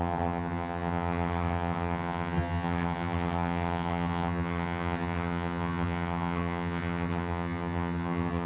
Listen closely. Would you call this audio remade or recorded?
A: remade